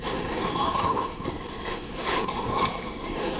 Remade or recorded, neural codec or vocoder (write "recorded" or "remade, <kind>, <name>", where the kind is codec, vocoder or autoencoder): remade, codec, SNAC